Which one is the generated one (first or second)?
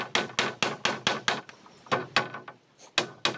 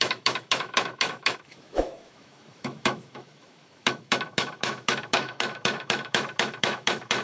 second